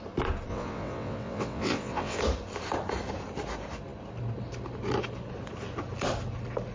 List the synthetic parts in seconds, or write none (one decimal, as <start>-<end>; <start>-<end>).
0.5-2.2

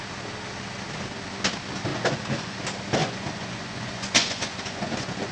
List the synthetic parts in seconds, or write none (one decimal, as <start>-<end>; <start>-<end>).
1.9-2.6; 3.0-5.3

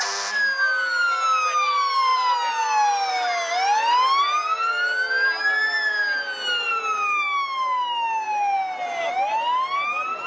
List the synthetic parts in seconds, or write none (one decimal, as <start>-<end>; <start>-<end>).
none

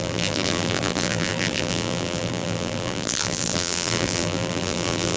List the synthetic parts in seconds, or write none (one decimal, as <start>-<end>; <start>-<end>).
0.0-5.2

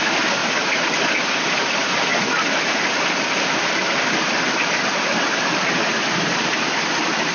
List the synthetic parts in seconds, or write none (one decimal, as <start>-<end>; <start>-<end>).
none